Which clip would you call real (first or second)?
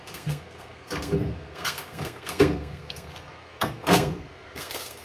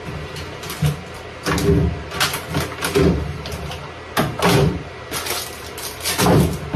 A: second